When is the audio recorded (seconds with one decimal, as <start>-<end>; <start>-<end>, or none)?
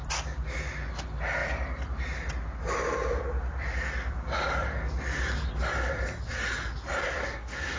0.0-7.0